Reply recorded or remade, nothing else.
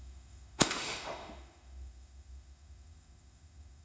remade